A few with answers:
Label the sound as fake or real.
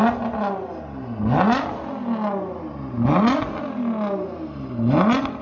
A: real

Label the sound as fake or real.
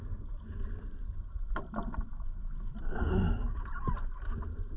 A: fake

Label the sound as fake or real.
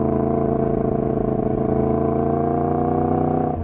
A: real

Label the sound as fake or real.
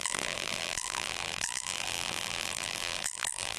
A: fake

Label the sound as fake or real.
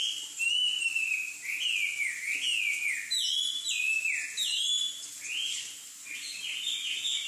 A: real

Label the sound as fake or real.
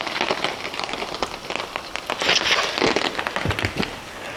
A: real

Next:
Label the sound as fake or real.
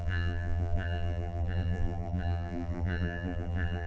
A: fake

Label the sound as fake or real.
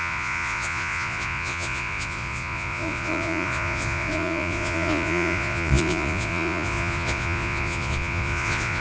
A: fake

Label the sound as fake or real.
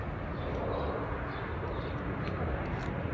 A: real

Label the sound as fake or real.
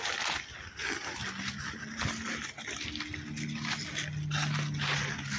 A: real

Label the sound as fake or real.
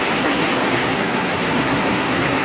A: fake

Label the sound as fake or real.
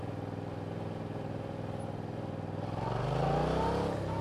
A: real